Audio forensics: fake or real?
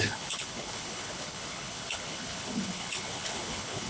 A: fake